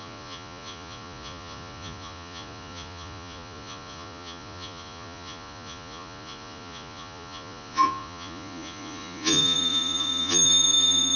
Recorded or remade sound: remade